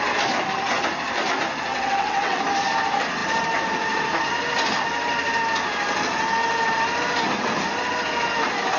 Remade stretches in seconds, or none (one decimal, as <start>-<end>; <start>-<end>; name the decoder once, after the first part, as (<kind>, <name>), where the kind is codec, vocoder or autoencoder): 1.7-2.4 (vocoder, WaveNeXt)